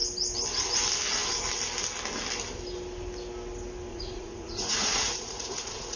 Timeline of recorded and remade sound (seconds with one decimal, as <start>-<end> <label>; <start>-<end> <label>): 0.0-3.9 recorded; 3.9-6.0 remade